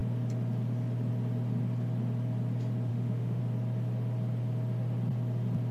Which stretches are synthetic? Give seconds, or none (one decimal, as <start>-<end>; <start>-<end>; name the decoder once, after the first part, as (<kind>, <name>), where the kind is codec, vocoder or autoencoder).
2.9-3.4 (autoencoder, DAC-VAE)